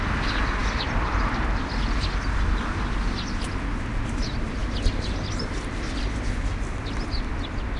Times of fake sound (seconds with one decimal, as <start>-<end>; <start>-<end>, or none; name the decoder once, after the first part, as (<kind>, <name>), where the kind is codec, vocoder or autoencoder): 0.6-1.7 (vocoder, BigVGAN v2)